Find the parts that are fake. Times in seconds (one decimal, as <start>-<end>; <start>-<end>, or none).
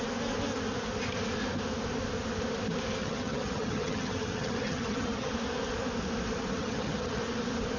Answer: 3.0-5.3; 6.6-7.2